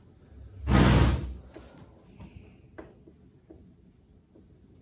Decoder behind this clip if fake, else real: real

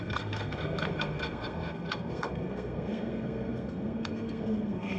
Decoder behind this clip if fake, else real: fake, codec, SNAC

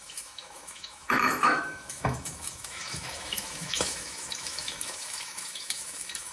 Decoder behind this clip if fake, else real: fake, autoencoder, DAC-VAE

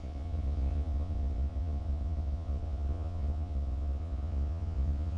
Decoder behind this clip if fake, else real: fake, vocoder, Vocos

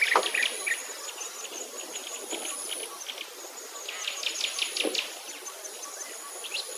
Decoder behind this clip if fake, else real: real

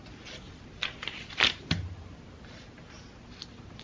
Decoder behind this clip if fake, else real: real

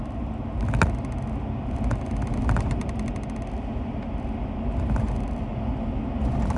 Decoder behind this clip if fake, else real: real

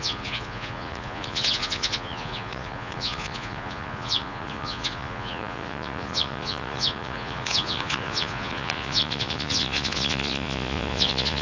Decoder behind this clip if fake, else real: fake, vocoder, Vocos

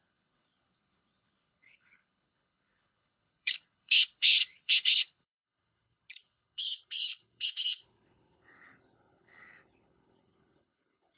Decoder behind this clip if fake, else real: fake, codec, HILCodec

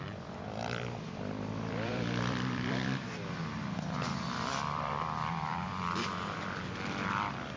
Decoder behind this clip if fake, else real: fake, vocoder, BigVGAN v2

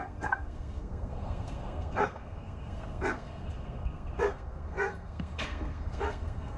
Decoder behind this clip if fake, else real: fake, codec, SNAC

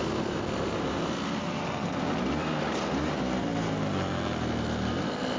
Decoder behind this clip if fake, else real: real